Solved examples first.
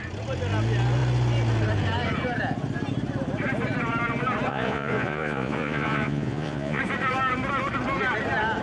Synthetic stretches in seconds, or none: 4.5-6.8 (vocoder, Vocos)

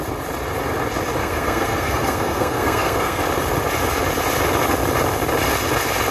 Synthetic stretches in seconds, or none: 1.2-3.2 (codec, SNAC)

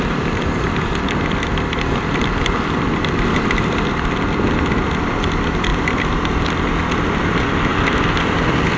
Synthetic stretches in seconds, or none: 0.0-5.7 (vocoder, BigVGAN v2); 7.2-8.8

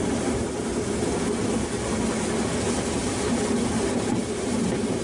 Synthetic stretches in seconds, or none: 0.0-0.7 (vocoder, BigVGAN v2); 3.7-5.0

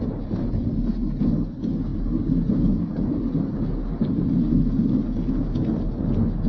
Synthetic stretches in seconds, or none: none

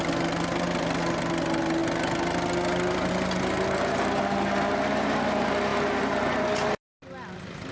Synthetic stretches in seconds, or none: none